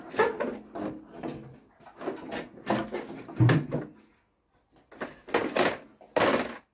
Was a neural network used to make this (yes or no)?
no